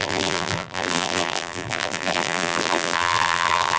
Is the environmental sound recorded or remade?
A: remade